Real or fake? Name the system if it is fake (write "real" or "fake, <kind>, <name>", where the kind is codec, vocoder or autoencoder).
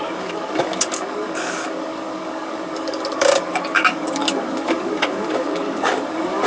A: fake, codec, DAC